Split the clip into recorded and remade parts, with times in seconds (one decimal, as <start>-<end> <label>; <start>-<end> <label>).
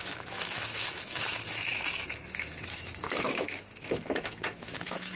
0.0-5.2 remade